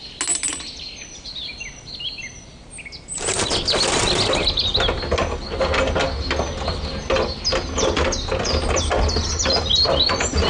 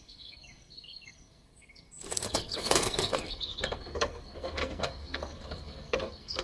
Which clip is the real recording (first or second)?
first